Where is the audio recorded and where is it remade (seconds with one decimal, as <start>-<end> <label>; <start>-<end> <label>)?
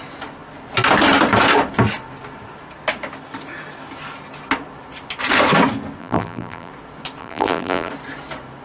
0.0-6.0 recorded; 6.0-6.7 remade; 6.7-7.2 recorded; 7.2-7.9 remade; 7.9-8.6 recorded